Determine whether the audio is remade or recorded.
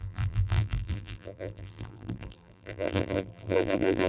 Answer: remade